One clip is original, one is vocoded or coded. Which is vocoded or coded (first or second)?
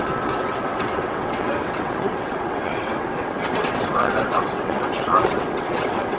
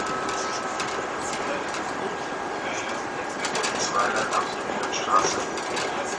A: first